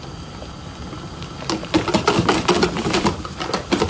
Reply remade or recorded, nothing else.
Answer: recorded